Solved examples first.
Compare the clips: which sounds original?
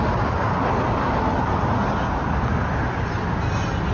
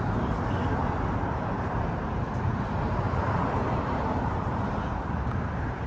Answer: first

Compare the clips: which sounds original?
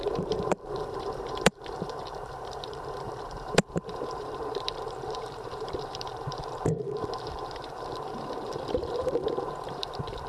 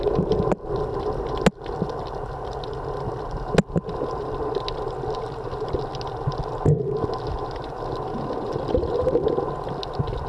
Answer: second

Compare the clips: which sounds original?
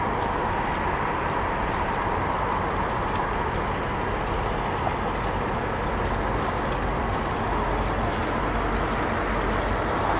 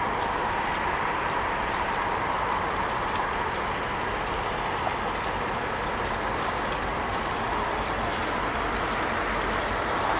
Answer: first